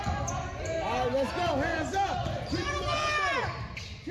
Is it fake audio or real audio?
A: real